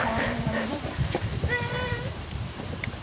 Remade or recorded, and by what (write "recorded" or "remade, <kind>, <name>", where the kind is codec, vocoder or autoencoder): remade, vocoder, BigVGAN v2